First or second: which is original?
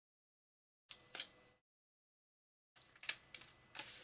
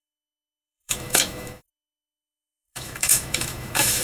first